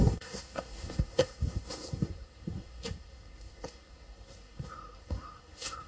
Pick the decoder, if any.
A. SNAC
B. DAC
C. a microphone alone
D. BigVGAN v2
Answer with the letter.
A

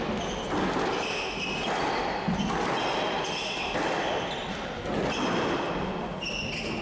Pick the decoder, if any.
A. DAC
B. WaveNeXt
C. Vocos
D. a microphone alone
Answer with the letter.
D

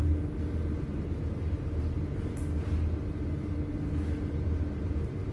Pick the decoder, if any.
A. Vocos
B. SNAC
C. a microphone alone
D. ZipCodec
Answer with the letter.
C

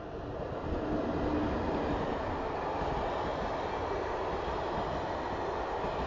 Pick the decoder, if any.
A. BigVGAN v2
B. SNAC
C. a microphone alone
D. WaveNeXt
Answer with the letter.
C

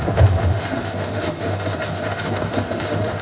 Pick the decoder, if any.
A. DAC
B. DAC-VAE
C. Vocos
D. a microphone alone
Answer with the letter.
B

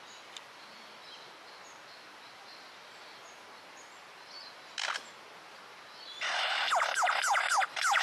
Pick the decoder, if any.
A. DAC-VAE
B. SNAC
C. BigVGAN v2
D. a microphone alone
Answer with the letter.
D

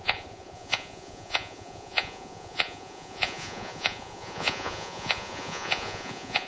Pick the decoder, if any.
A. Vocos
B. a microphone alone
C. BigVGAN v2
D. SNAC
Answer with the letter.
A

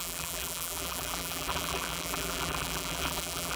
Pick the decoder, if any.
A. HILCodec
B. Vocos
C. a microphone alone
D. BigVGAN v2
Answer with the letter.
D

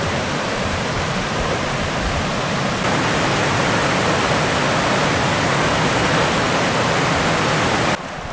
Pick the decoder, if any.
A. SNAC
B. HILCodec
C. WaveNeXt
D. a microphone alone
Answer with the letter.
D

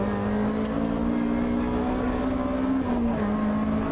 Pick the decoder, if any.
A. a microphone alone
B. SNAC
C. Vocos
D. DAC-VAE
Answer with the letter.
A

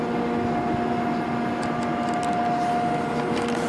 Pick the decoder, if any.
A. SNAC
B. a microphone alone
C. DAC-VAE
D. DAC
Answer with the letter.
B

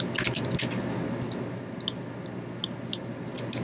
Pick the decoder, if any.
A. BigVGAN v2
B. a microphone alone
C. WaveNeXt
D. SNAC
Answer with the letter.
B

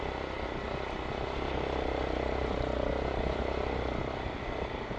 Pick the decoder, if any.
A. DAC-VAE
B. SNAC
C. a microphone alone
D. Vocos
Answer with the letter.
C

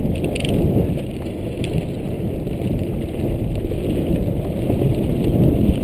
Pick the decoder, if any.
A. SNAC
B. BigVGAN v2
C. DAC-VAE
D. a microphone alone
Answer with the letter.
D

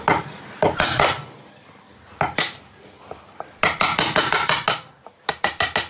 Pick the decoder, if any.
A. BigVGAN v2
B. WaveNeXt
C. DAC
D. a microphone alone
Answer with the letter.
D